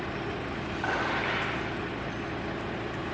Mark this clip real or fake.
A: fake